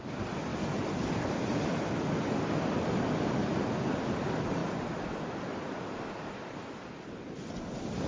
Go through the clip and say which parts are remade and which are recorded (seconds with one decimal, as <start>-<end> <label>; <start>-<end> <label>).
0.0-0.5 recorded; 0.5-1.6 remade; 1.6-8.1 recorded